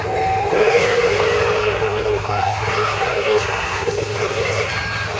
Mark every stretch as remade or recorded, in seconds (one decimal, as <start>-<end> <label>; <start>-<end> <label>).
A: 0.0-0.5 recorded; 0.5-1.2 remade; 1.2-1.6 recorded; 1.6-4.7 remade; 4.7-5.2 recorded